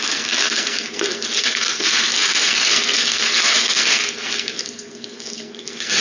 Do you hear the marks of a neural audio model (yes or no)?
yes